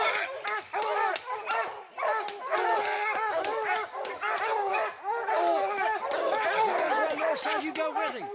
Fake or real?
real